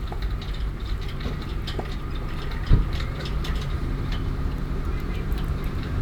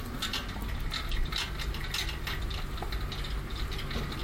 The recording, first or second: second